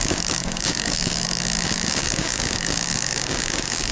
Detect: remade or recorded remade